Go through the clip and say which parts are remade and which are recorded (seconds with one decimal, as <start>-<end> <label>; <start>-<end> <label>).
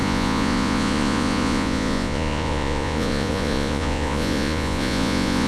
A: 0.0-5.5 remade